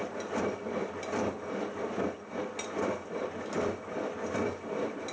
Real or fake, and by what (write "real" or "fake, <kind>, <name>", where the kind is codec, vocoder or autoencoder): real